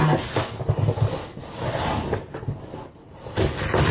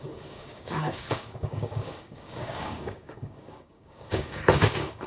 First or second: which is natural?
first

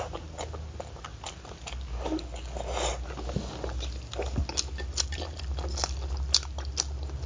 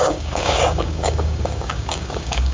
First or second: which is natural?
first